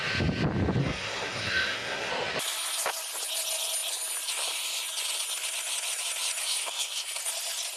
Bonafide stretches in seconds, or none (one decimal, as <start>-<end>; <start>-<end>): 0.0-0.8; 2.1-6.4; 7.2-7.8